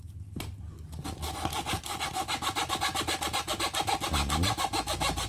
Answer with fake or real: real